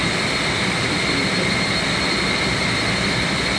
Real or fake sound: real